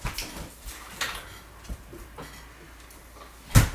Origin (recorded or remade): recorded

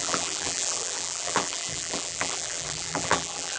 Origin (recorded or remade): remade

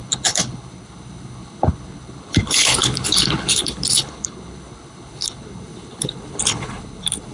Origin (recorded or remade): remade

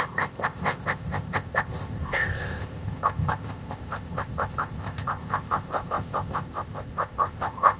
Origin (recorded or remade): remade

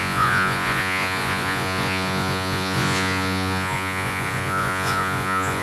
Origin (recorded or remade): remade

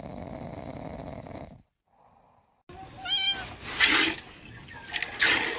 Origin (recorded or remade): recorded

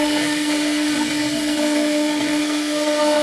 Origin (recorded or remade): remade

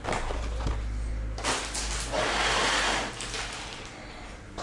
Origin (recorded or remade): recorded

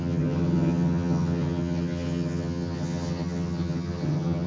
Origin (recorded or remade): remade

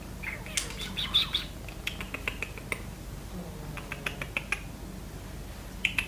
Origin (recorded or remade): recorded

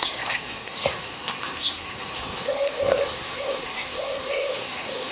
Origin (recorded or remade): remade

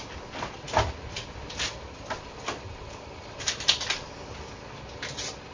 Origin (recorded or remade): recorded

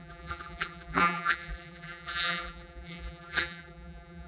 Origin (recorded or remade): remade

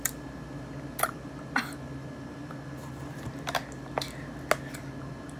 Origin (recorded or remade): recorded